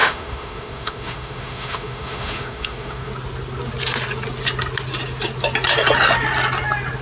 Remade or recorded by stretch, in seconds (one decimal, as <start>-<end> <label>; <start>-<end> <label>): 0.0-3.1 remade; 3.1-7.0 recorded